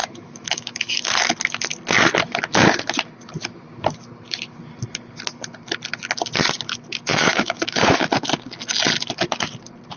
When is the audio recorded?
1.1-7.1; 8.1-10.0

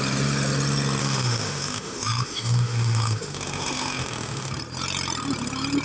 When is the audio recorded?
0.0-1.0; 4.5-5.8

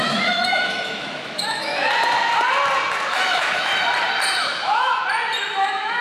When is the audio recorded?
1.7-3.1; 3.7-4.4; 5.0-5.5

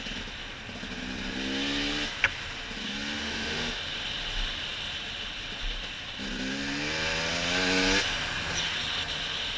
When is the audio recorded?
0.0-3.2; 3.8-9.6

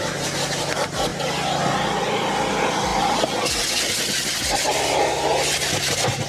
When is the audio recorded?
0.0-6.3

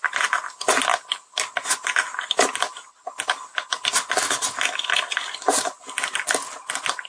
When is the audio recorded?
0.0-7.1

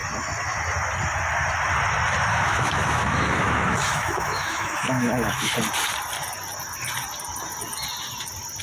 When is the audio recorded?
0.0-2.3; 5.5-8.6